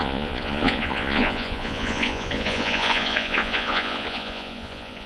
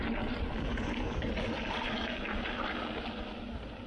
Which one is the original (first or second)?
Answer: second